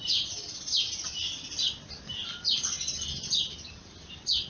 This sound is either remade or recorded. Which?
recorded